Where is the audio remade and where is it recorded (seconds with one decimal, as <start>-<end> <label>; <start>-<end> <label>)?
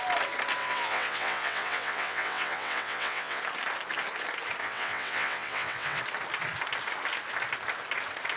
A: 0.0-0.6 recorded; 0.6-3.4 remade; 3.4-4.6 recorded; 4.6-6.0 remade; 6.0-8.4 recorded